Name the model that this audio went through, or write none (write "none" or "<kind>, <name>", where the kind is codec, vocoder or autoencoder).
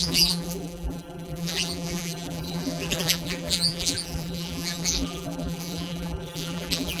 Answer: vocoder, BigVGAN v2